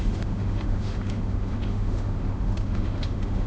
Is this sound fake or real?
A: fake